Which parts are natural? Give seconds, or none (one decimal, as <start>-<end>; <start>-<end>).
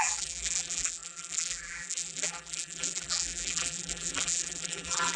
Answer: none